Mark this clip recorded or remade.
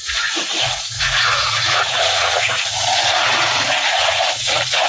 remade